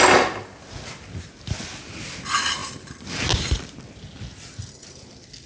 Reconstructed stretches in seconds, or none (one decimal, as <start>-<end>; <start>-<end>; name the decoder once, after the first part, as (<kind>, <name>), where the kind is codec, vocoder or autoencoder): none